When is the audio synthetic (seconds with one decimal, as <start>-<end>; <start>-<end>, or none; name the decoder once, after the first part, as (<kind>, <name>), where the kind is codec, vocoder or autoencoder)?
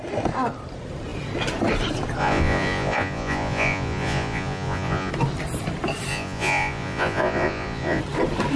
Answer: 2.2-5.1 (vocoder, Vocos); 6.1-8.0